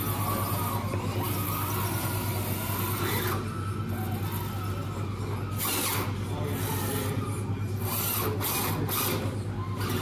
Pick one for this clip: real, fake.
real